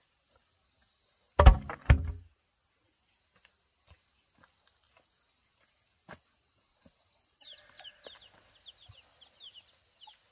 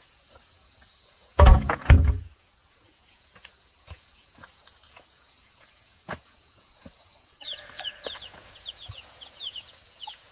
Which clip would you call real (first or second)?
first